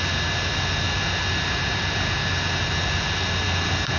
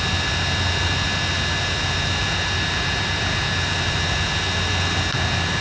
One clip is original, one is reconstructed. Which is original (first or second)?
second